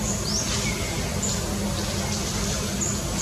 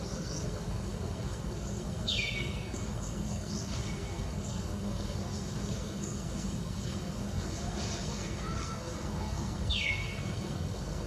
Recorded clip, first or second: first